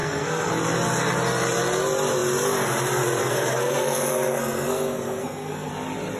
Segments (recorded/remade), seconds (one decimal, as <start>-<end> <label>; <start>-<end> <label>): 0.0-0.5 remade; 0.5-3.2 recorded; 3.2-5.7 remade; 5.7-6.2 recorded